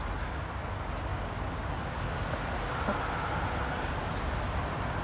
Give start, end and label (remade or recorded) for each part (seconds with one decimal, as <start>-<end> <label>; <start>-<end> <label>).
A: 0.0-1.1 recorded; 1.1-1.7 remade; 1.7-5.0 recorded

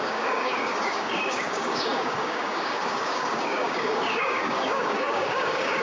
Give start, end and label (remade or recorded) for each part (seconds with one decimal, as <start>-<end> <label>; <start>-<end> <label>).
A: 0.0-5.8 remade

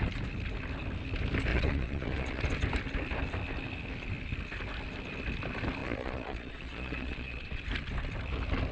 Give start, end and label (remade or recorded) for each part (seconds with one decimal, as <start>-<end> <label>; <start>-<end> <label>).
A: 0.0-1.5 recorded; 1.5-2.4 remade; 2.4-5.8 recorded; 5.8-7.6 remade; 7.6-8.7 recorded

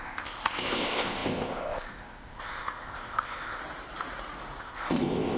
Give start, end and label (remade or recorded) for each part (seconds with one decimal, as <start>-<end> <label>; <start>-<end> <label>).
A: 0.0-3.6 remade; 3.6-4.6 recorded; 4.6-5.4 remade

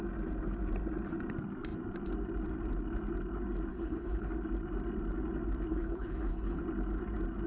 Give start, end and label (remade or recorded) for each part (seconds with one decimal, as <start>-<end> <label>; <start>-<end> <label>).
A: 0.0-3.7 recorded; 3.7-4.3 remade; 4.3-5.7 recorded; 5.7-6.6 remade; 6.6-7.5 recorded

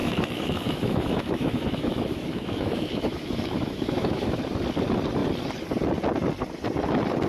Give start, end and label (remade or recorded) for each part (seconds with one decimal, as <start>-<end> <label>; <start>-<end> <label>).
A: 0.0-4.4 remade; 4.4-7.3 recorded

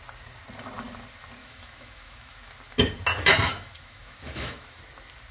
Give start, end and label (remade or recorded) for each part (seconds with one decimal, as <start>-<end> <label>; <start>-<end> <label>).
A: 0.0-1.4 recorded; 1.4-2.5 remade; 2.5-3.5 recorded; 3.5-4.8 remade; 4.8-5.3 recorded

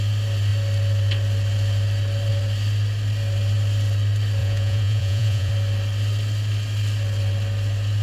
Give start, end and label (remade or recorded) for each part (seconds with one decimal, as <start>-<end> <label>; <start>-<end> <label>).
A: 0.0-4.4 recorded; 4.4-5.5 remade; 5.5-8.0 recorded